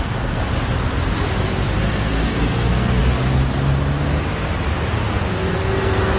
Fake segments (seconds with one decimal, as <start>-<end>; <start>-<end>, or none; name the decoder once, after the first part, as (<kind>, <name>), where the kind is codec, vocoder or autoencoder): 0.0-0.4 (codec, SNAC); 1.8-3.0; 5.5-6.2